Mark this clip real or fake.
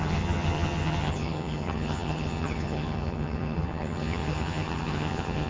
fake